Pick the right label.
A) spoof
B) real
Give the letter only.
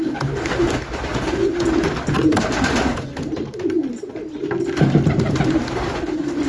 B